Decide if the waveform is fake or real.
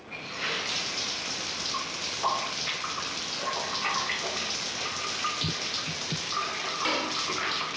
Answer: real